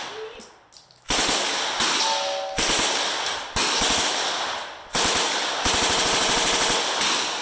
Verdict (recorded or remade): recorded